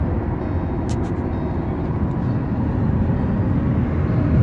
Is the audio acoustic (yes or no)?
yes